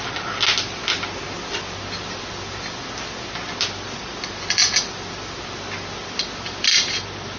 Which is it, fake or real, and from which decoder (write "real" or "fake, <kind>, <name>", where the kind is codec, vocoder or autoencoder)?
real